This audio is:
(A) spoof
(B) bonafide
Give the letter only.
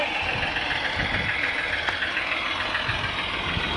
A